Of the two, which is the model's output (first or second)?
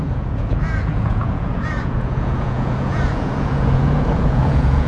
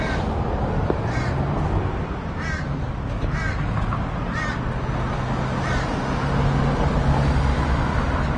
first